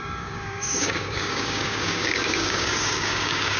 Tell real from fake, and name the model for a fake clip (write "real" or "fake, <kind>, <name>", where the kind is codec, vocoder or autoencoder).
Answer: fake, codec, DAC